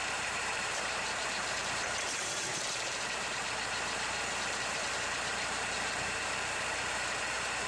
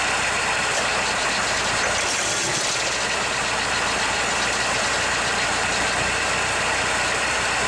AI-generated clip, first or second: first